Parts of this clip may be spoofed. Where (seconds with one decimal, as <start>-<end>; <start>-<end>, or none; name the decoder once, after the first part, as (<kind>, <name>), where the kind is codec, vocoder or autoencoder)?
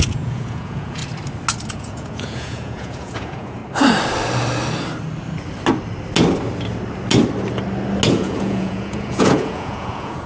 0.0-1.0 (vocoder, Vocos); 1.7-3.6; 8.1-10.3